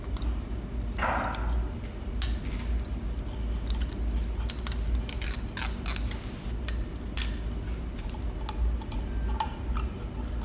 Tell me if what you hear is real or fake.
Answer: real